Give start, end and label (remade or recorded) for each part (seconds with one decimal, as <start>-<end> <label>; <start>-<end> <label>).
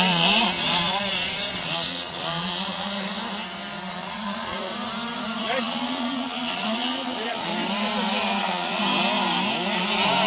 0.0-3.2 remade; 3.2-3.9 recorded; 3.9-4.7 remade; 4.7-5.4 recorded; 5.4-7.5 remade; 7.5-8.4 recorded; 8.4-8.8 remade; 8.8-10.3 recorded